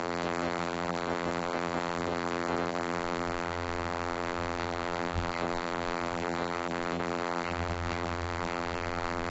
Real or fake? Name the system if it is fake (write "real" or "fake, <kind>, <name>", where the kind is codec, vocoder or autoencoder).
fake, vocoder, BigVGAN v2